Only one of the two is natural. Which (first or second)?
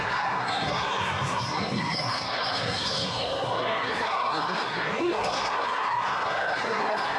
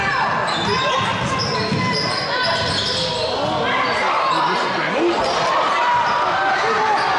second